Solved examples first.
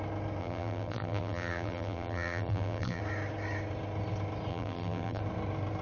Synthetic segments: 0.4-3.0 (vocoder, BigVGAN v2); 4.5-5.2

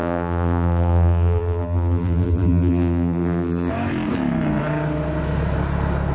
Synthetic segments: 0.0-3.7 (vocoder, BigVGAN v2)

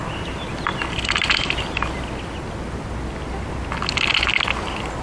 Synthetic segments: none